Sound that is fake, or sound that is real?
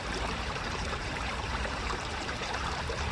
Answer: fake